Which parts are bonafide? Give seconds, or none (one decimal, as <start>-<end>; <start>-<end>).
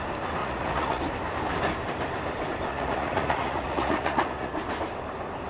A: 0.0-0.4; 1.0-2.7; 4.5-5.5